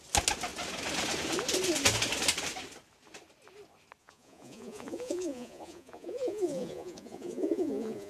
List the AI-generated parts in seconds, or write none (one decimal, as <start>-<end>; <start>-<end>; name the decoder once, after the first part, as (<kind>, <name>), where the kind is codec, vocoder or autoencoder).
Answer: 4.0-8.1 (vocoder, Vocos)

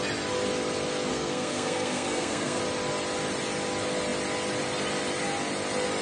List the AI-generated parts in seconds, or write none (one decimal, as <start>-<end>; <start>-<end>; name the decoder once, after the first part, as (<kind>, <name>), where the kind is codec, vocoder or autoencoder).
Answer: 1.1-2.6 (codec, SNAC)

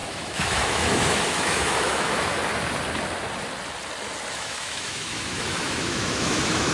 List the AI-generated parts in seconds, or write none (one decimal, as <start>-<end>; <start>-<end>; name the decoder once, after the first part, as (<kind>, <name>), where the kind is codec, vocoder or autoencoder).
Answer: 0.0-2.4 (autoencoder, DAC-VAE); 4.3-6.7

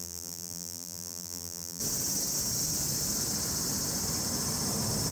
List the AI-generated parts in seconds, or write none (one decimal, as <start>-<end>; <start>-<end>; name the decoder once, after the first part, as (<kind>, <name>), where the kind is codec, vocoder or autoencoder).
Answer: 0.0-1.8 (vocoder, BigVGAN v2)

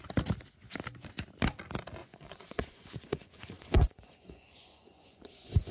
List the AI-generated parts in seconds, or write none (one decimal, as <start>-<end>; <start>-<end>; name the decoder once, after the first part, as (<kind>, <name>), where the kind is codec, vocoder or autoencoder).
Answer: 2.0-5.7 (vocoder, Vocos)